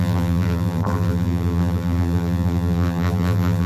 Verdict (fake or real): fake